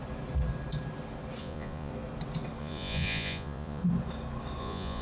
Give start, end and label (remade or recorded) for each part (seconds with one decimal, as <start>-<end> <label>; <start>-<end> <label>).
0.0-1.4 recorded; 1.4-1.9 remade; 1.9-2.6 recorded; 2.6-3.8 remade; 3.8-4.6 recorded; 4.6-5.0 remade